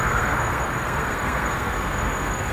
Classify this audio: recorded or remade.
remade